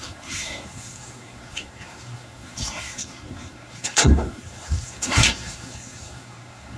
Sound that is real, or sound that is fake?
fake